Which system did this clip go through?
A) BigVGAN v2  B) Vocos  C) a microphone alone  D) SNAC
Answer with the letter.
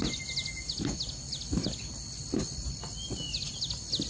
C